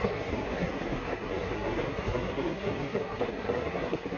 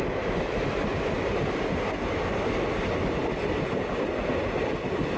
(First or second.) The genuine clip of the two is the second